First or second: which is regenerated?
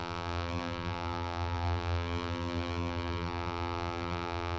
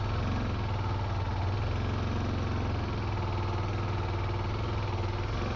first